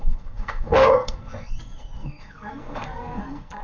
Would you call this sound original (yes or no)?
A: no